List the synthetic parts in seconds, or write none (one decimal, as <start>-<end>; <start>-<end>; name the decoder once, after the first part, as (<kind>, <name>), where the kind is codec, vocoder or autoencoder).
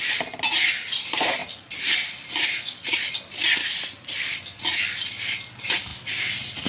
none